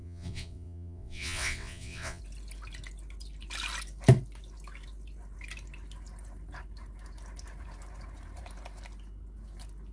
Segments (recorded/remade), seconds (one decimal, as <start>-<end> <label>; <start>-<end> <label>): 0.0-2.2 remade; 2.2-9.9 recorded